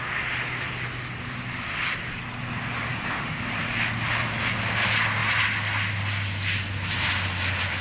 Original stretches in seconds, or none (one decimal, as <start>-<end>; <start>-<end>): 0.0-2.9; 3.5-7.8